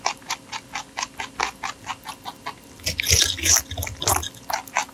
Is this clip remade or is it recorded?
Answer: recorded